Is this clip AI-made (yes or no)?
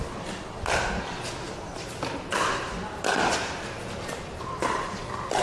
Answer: no